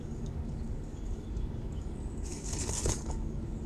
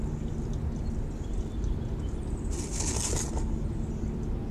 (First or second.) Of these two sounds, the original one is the second